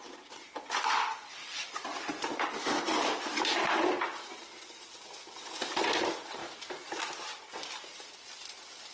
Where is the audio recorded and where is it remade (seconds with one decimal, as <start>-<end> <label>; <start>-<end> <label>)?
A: 0.0-8.9 recorded